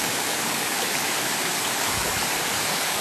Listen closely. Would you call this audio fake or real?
fake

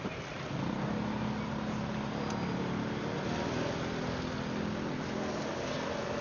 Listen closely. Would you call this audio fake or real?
real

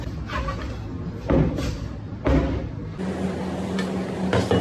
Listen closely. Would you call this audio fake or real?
real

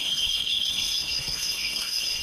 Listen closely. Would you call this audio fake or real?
fake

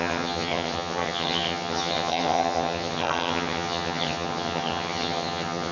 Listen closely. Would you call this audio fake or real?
fake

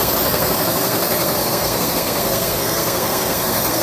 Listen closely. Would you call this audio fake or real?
fake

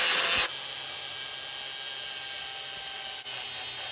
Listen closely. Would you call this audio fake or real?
real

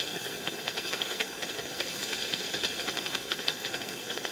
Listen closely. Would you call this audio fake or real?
fake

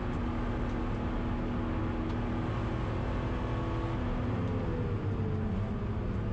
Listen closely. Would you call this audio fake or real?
real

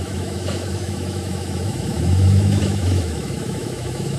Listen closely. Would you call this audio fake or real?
fake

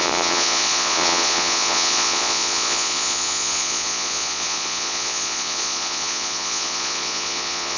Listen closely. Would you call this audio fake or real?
fake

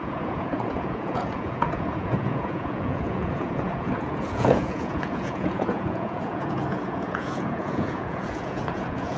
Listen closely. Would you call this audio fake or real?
fake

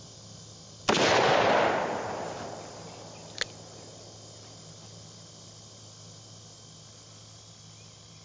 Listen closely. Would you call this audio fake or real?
real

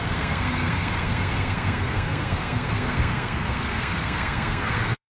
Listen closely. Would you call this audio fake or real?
fake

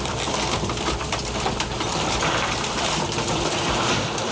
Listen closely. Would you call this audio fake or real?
fake